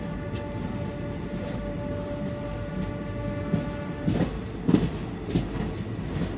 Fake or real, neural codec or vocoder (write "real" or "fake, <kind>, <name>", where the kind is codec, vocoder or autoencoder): real